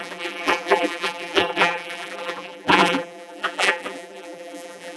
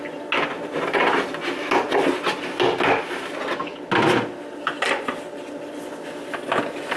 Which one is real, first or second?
second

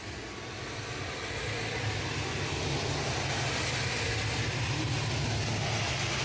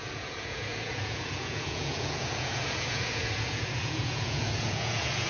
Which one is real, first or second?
first